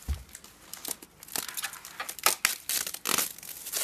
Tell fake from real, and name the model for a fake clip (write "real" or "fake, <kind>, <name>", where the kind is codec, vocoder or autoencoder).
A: real